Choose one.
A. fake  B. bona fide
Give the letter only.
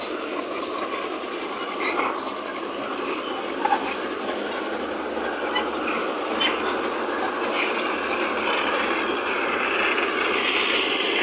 B